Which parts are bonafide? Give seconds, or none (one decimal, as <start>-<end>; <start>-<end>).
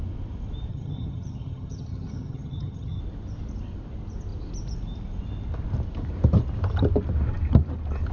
0.0-0.7; 3.0-8.1